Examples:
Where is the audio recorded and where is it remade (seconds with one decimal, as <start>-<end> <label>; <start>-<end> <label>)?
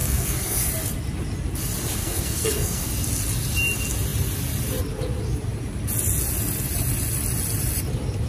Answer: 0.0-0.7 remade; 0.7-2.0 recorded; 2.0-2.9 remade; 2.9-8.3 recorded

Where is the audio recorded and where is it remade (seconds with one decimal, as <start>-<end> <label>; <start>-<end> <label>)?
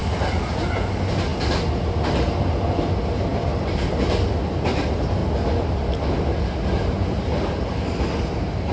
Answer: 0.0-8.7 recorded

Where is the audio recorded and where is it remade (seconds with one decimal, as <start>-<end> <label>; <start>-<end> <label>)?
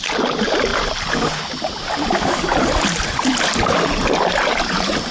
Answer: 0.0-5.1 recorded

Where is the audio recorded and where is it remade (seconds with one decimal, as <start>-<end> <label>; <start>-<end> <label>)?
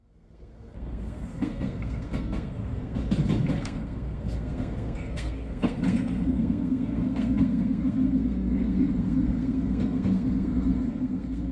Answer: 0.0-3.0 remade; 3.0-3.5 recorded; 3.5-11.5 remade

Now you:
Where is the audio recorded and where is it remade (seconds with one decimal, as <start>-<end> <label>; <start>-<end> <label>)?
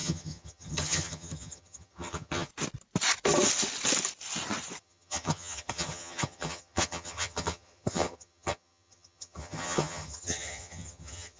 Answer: 0.0-2.5 remade; 2.5-4.8 recorded; 4.8-11.4 remade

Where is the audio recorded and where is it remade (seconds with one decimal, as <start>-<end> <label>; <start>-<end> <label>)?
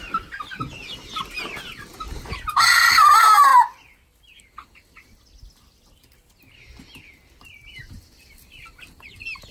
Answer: 0.0-9.5 recorded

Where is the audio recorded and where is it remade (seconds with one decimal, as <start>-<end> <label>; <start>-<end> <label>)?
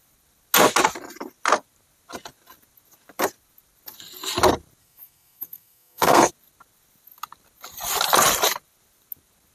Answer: 0.0-4.8 recorded; 4.8-6.3 remade; 6.3-9.5 recorded